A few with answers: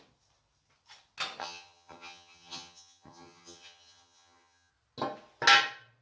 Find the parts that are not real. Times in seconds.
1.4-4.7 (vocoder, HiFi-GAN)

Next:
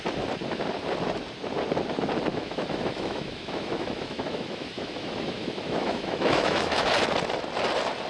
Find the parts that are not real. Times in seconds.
2.3-6.9 (autoencoder, DAC-VAE)

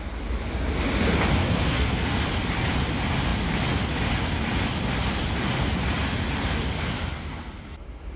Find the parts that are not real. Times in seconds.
1.4-2.2 (codec, SNAC)

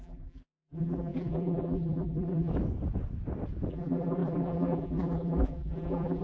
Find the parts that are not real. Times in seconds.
0.0-2.5 (vocoder, BigVGAN v2); 3.7-6.2